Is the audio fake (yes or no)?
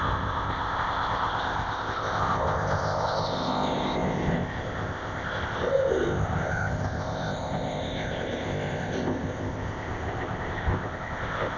yes